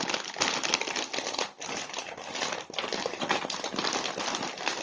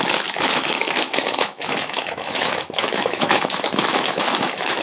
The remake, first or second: second